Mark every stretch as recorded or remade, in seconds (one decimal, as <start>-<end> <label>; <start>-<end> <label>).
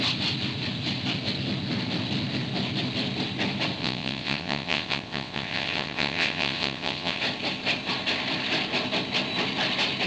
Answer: 0.0-3.8 recorded; 3.8-7.2 remade; 7.2-10.1 recorded